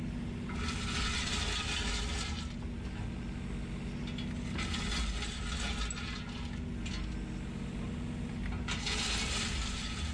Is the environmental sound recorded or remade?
recorded